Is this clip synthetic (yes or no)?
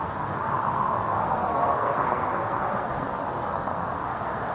yes